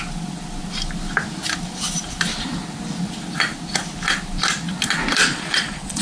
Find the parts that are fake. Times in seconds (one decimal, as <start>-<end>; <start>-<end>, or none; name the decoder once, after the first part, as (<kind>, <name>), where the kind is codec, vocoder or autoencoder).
5.2-6.0 (vocoder, Vocos)